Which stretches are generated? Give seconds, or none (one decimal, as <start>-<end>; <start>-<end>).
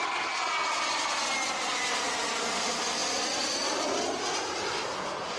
none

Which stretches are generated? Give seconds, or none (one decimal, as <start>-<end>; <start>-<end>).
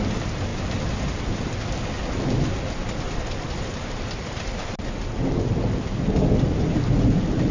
none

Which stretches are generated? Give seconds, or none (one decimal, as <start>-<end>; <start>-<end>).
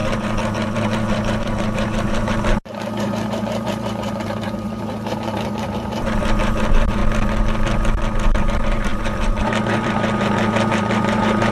0.0-7.0; 8.4-11.5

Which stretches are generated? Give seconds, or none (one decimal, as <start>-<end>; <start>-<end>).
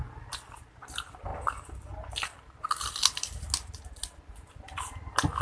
none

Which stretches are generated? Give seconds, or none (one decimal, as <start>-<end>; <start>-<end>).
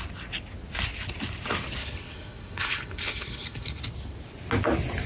1.8-3.8